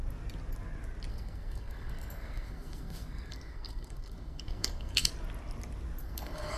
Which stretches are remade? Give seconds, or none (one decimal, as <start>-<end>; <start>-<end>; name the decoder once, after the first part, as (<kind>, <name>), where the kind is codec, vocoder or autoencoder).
1.1-5.1 (codec, SNAC); 6.0-6.6